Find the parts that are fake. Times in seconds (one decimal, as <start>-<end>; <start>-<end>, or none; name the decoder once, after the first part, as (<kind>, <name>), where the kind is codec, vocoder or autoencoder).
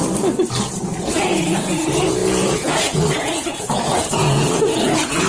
2.2-5.3 (vocoder, Vocos)